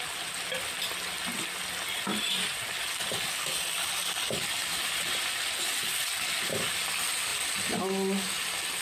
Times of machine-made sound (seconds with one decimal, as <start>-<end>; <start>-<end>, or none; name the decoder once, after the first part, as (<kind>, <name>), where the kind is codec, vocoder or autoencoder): 2.1-2.7 (vocoder, BigVGAN v2); 4.6-5.3